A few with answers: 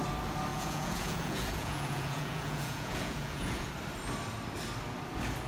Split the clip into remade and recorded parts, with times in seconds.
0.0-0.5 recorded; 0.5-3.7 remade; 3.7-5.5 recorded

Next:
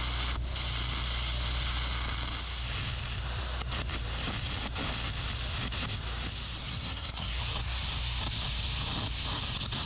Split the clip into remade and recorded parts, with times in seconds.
0.0-6.6 recorded; 6.6-7.4 remade; 7.4-9.9 recorded

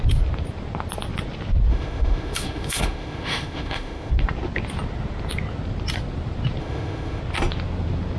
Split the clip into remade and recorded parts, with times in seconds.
0.0-1.7 recorded; 1.7-4.1 remade; 4.1-6.6 recorded; 6.6-7.2 remade; 7.2-8.2 recorded

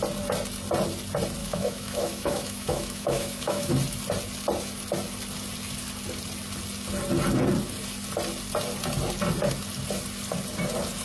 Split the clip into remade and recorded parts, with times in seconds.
0.0-1.4 recorded; 1.4-3.7 remade; 3.7-11.0 recorded

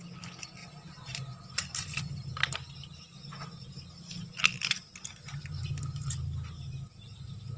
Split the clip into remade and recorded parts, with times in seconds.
0.0-0.6 recorded; 0.6-2.3 remade; 2.3-7.6 recorded

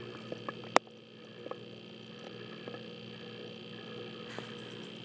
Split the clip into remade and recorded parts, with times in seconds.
0.0-5.0 recorded

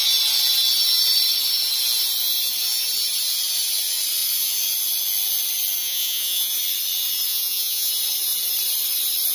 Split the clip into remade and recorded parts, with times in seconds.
0.0-5.8 recorded; 5.8-6.5 remade; 6.5-7.3 recorded; 7.3-7.9 remade; 7.9-9.3 recorded

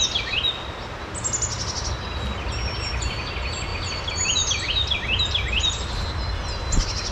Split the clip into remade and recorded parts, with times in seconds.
0.0-7.1 recorded